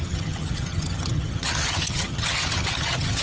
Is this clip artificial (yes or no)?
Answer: yes